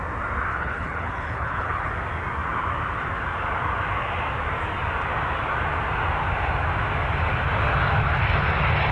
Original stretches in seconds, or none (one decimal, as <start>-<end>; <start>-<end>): 0.0-0.5; 1.9-8.9